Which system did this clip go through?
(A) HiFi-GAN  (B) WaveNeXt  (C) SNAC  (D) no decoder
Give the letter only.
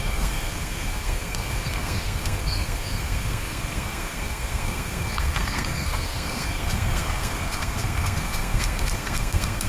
C